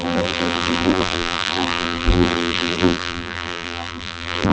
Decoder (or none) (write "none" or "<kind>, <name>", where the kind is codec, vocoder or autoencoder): vocoder, BigVGAN v2